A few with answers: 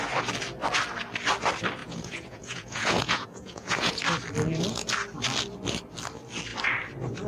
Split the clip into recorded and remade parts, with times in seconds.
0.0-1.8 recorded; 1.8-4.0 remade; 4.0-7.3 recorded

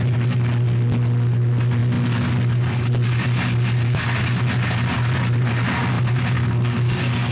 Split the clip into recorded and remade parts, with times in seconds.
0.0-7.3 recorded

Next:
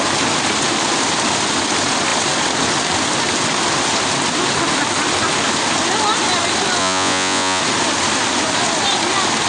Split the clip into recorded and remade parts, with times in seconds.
0.0-6.8 recorded; 6.8-7.6 remade; 7.6-9.5 recorded

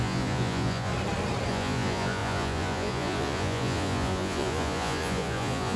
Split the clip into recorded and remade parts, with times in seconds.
0.0-0.9 remade; 0.9-1.5 recorded; 1.5-5.8 remade

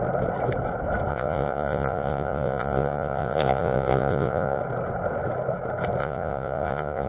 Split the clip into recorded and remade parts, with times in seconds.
0.0-1.1 recorded; 1.1-4.6 remade; 4.6-6.0 recorded; 6.0-7.1 remade

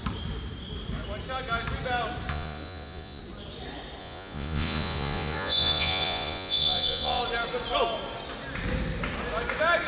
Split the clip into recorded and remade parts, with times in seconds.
0.0-2.3 recorded; 2.3-3.2 remade; 3.2-4.0 recorded; 4.0-7.2 remade; 7.2-9.9 recorded